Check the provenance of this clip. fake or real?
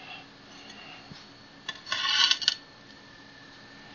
real